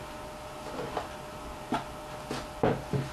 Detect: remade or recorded recorded